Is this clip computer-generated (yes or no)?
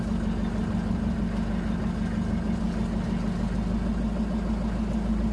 no